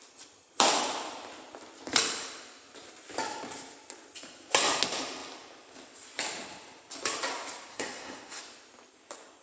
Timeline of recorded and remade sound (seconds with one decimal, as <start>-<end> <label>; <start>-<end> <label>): 0.0-7.7 recorded; 7.7-8.4 remade; 8.4-9.4 recorded